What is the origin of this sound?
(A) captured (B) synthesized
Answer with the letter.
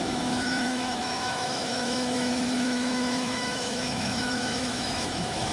B